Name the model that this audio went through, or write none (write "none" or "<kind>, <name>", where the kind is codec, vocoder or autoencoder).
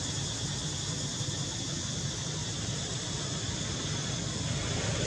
none